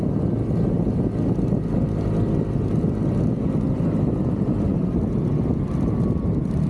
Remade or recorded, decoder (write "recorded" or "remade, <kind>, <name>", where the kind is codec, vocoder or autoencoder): recorded